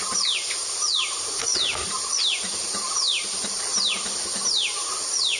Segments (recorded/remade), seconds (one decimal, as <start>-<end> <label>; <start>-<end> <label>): 0.0-1.5 recorded; 1.5-3.9 remade; 3.9-5.4 recorded